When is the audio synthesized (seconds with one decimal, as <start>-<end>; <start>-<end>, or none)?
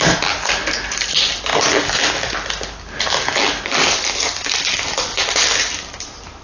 5.1-5.6